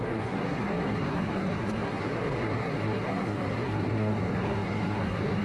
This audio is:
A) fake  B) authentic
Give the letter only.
A